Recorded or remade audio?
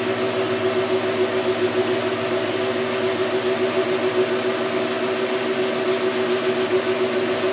recorded